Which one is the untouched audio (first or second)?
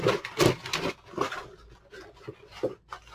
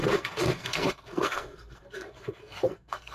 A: first